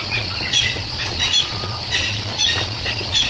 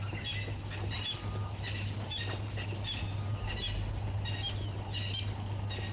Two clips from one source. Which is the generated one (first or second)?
first